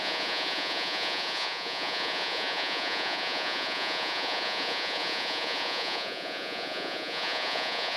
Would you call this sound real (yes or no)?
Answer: no